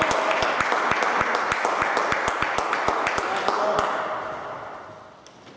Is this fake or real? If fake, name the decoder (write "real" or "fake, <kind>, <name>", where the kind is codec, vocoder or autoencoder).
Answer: real